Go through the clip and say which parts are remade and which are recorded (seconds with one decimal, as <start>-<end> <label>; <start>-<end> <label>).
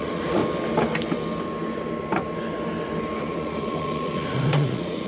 0.0-0.4 remade; 0.4-3.2 recorded; 3.2-5.1 remade